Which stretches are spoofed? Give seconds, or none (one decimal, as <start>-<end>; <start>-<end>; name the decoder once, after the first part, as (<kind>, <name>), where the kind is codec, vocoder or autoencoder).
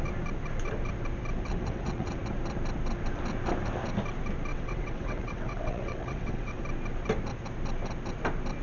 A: 1.5-2.2 (vocoder, WaveNeXt); 4.5-6.6